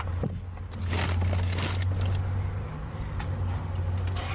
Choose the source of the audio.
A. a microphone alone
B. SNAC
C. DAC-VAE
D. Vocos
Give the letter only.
A